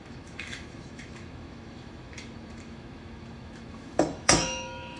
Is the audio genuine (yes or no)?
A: no